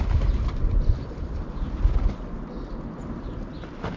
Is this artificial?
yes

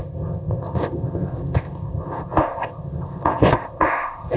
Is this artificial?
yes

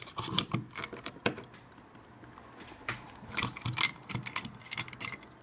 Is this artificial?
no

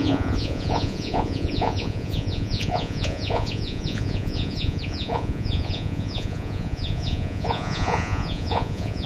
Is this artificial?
yes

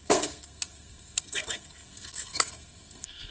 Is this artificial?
yes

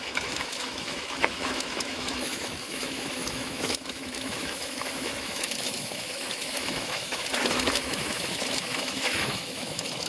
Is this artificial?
yes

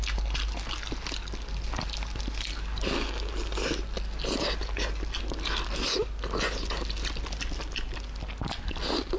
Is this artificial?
no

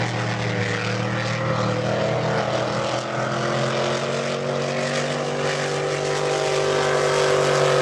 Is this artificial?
no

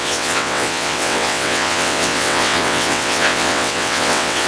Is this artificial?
yes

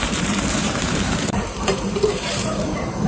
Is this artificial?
yes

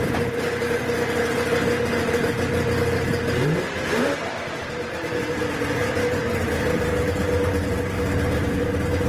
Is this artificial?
no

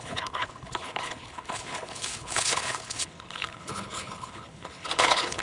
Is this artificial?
yes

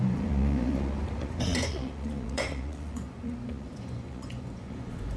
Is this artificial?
yes